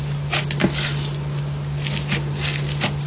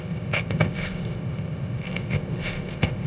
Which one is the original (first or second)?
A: first